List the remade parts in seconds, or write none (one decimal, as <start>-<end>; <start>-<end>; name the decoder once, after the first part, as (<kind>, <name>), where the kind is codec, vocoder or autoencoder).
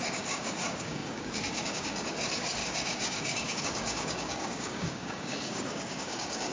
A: 0.0-6.5 (codec, DAC)